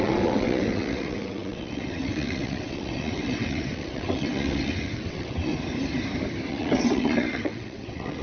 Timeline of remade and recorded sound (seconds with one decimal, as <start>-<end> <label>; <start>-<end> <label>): 0.0-5.5 remade; 5.5-6.5 recorded; 6.5-8.2 remade